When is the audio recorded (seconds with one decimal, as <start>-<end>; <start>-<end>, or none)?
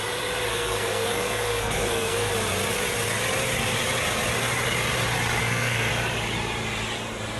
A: 0.0-0.5; 2.3-5.4; 5.9-7.4